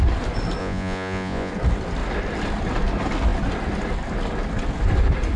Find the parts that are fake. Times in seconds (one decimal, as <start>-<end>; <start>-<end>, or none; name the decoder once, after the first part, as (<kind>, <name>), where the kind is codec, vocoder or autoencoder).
0.6-1.5 (vocoder, Vocos)